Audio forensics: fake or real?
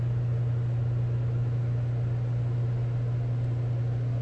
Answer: real